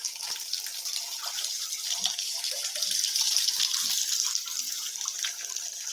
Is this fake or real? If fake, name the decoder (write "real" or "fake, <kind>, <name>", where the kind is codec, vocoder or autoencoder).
real